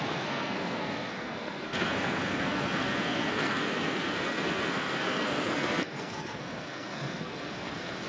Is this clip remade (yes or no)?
yes